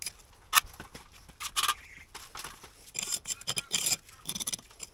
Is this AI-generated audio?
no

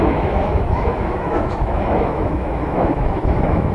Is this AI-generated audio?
yes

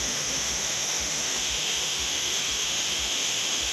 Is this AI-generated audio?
yes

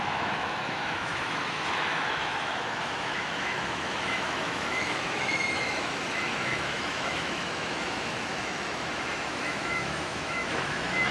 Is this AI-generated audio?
yes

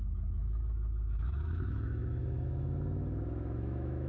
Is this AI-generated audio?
yes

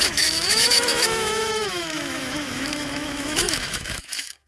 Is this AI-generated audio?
yes